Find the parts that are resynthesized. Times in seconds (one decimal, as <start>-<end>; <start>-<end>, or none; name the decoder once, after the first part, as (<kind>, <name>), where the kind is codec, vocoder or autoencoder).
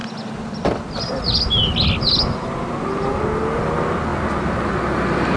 none